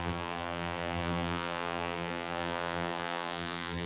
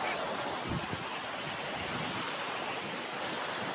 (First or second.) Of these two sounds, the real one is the second